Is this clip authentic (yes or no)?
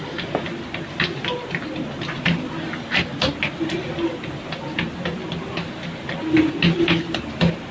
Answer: yes